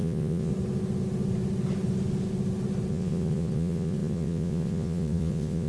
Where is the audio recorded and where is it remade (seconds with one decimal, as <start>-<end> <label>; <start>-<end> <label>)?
0.0-0.5 remade; 0.5-2.9 recorded; 2.9-5.7 remade